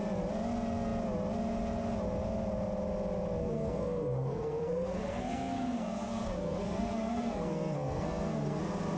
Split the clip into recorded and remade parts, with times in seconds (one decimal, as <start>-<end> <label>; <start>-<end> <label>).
0.0-3.4 recorded; 3.4-8.6 remade; 8.6-9.0 recorded